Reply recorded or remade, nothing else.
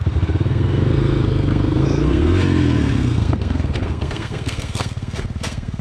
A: remade